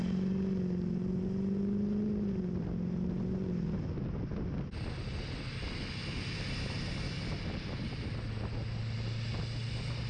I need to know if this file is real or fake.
real